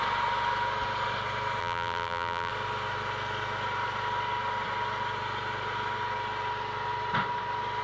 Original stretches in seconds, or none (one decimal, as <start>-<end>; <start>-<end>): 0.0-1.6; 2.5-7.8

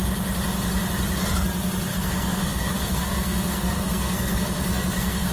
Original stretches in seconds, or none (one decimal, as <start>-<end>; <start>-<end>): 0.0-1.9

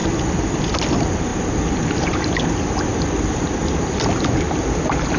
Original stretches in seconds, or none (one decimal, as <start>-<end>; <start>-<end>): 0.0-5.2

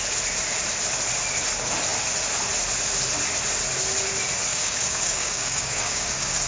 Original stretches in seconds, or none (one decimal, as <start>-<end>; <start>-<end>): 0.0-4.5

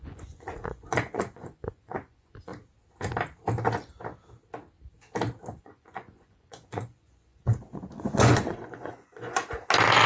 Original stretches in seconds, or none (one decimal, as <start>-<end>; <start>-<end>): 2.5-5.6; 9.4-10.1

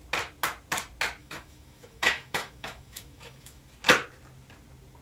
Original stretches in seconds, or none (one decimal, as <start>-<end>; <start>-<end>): 0.0-1.2; 3.6-5.0

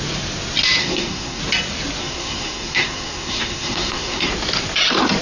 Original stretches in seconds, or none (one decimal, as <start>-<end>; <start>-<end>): 0.0-0.8; 1.4-2.0; 4.3-5.2